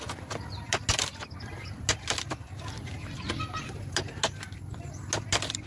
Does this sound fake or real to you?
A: real